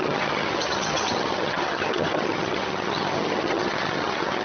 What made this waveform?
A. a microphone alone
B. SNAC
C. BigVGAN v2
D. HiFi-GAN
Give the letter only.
D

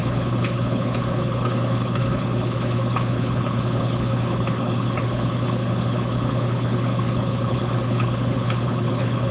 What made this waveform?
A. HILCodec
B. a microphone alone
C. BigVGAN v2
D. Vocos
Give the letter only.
A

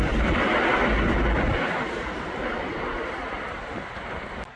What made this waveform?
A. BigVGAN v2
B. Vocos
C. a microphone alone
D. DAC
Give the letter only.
A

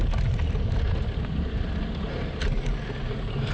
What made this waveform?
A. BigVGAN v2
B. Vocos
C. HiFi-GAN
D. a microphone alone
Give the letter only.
D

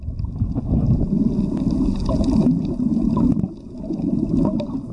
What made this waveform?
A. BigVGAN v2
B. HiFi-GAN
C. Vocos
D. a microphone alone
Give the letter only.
D